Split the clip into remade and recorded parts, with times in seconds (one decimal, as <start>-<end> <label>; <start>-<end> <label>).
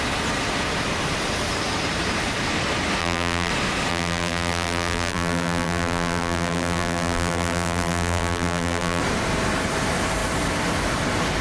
0.0-3.0 recorded; 3.0-3.5 remade; 3.5-3.9 recorded; 3.9-9.0 remade; 9.0-11.4 recorded